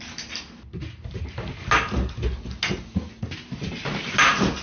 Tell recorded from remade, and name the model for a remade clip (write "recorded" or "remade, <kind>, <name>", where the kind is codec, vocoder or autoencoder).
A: recorded